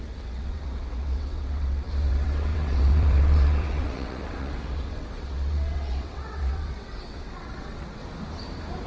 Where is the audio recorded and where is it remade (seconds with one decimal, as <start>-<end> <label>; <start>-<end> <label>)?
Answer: 0.0-8.0 remade; 8.0-8.9 recorded